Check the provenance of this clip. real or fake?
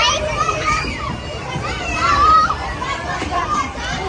fake